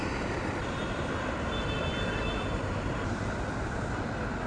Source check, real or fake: fake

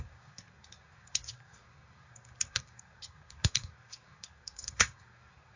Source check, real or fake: fake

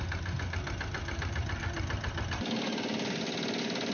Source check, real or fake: real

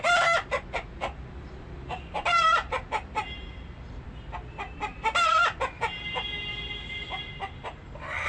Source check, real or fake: fake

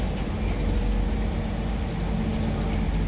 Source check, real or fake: real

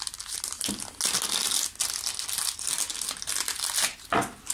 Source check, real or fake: real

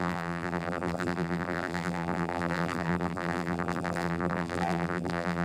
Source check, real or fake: fake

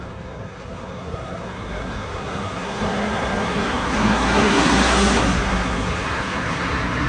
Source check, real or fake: fake